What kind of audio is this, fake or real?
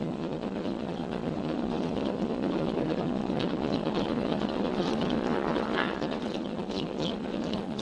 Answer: fake